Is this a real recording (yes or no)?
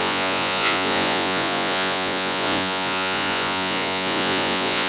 no